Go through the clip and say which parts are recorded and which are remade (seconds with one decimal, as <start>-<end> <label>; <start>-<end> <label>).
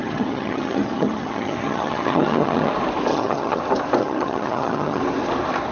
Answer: 0.0-2.7 remade; 2.7-3.1 recorded; 3.1-3.6 remade; 3.6-4.0 recorded; 4.0-5.0 remade; 5.0-5.7 recorded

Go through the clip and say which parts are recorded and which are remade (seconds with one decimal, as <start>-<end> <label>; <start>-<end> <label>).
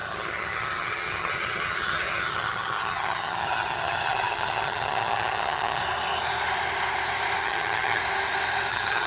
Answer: 0.0-5.8 remade; 5.8-7.4 recorded; 7.4-8.0 remade; 8.0-8.7 recorded; 8.7-9.1 remade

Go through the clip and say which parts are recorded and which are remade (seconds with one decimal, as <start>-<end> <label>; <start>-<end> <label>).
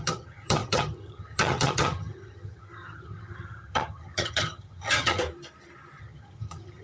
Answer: 0.0-5.2 remade; 5.2-6.0 recorded; 6.0-6.8 remade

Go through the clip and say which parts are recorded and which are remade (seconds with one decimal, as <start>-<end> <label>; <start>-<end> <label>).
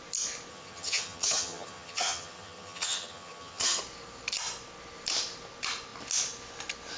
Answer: 0.0-0.5 recorded; 0.5-3.8 remade; 3.8-7.0 recorded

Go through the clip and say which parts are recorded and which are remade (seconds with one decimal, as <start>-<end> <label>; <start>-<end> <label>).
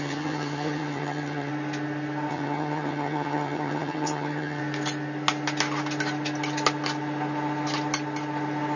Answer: 0.0-1.5 remade; 1.5-2.3 recorded; 2.3-4.6 remade; 4.6-8.8 recorded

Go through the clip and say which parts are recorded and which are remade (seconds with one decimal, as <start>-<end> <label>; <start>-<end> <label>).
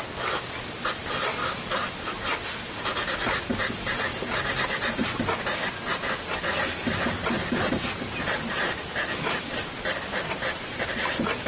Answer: 0.0-11.5 recorded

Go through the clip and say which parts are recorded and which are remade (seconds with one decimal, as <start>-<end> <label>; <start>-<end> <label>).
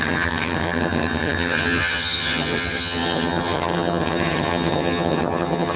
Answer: 0.0-5.8 remade